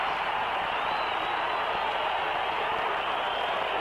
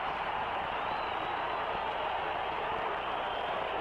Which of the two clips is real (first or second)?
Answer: first